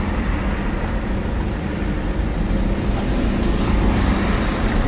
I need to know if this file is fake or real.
real